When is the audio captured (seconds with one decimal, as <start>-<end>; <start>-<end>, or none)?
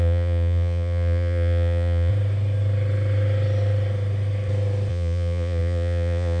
2.1-4.9